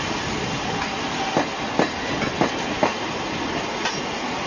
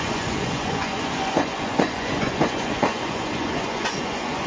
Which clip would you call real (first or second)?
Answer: first